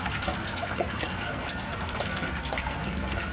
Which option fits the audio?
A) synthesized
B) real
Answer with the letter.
A